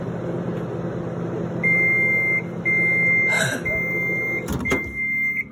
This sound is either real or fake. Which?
real